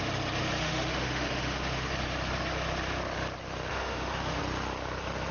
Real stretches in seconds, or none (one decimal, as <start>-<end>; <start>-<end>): 0.0-0.6; 1.9-3.7; 4.4-5.3